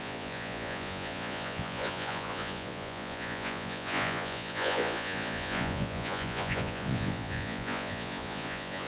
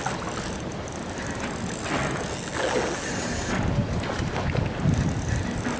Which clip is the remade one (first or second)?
first